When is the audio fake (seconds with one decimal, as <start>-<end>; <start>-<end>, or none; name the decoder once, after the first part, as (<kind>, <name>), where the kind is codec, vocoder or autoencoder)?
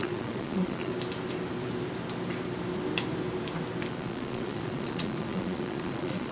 0.0-0.9 (vocoder, Vocos); 3.9-6.3